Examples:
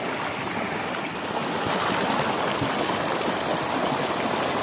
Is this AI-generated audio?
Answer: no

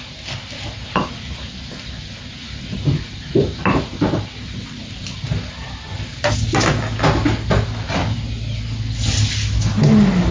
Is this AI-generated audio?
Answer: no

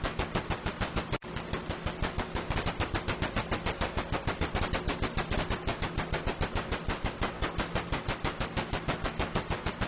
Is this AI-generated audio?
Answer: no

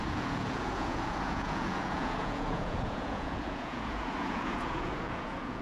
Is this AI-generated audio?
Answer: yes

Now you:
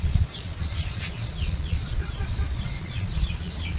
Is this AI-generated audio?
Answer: yes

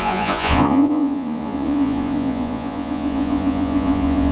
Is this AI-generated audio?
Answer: yes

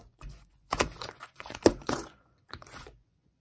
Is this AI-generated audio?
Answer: yes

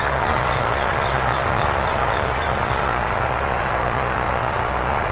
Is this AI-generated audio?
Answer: yes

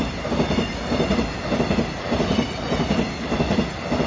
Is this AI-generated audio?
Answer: no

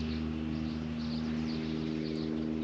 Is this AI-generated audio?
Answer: no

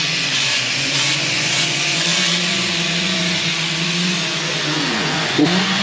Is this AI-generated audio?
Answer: yes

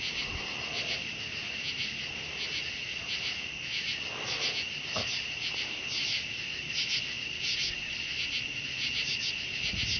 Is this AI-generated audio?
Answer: no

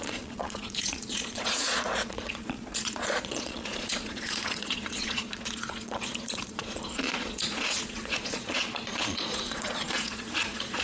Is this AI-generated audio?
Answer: yes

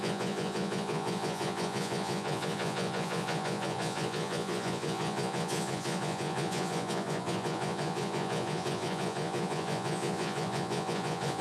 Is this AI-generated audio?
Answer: yes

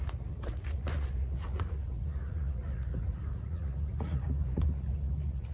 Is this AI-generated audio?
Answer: yes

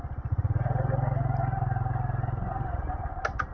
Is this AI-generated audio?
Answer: no